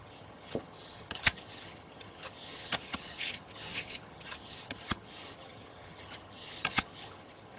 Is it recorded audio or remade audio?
remade